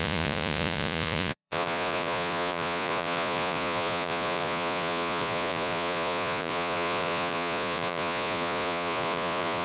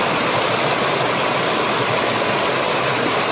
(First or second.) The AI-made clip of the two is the first